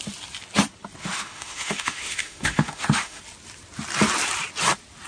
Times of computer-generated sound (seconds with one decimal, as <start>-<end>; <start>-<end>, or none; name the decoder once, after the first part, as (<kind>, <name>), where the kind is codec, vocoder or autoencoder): 1.0-3.2 (autoencoder, DAC-VAE)